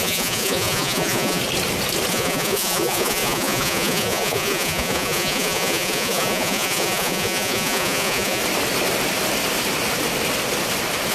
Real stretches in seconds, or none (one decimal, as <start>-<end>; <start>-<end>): 1.4-2.1; 8.4-11.1